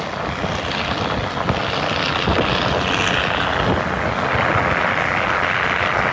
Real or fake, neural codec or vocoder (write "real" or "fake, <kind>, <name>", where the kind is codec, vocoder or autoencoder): real